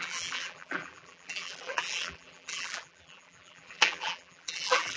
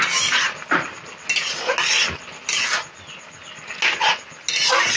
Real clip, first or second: second